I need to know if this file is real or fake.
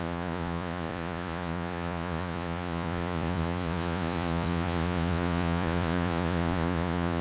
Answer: fake